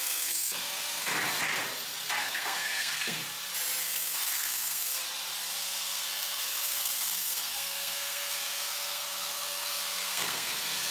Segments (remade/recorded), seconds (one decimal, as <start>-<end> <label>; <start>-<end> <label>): 0.0-1.1 remade; 1.1-2.2 recorded; 2.2-3.2 remade; 3.2-3.8 recorded; 3.8-5.0 remade; 5.0-5.6 recorded; 5.6-10.9 remade